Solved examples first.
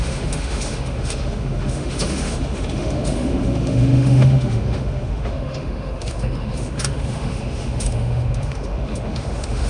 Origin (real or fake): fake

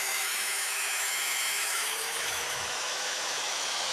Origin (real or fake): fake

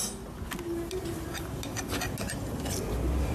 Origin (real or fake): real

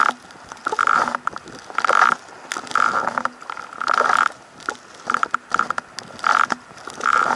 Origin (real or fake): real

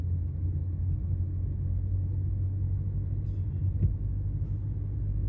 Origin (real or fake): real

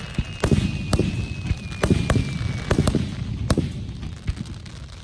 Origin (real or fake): real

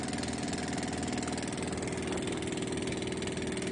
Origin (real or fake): real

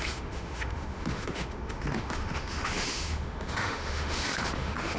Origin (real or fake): fake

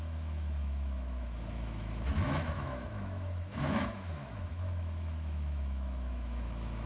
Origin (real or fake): fake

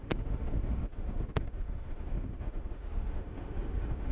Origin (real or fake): fake